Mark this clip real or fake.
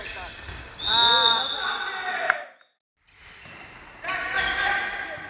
real